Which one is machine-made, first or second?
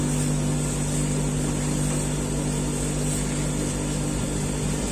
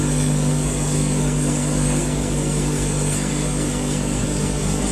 second